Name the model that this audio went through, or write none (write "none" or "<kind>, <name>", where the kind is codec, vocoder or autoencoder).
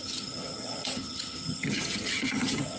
vocoder, HiFi-GAN